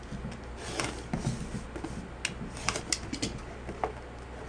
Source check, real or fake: real